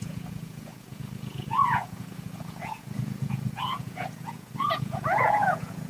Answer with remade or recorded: remade